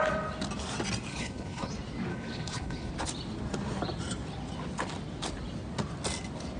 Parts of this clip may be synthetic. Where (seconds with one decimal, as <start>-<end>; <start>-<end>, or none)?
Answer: 1.1-1.7; 2.1-2.9